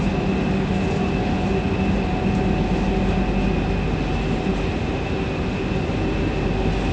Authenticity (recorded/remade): recorded